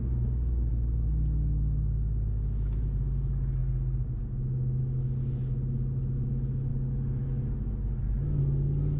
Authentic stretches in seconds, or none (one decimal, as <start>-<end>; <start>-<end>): 0.0-9.0